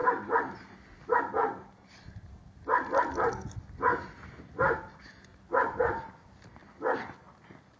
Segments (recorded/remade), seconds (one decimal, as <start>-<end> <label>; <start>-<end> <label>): 0.0-7.8 recorded